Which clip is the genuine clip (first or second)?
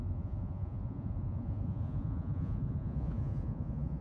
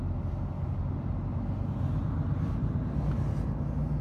second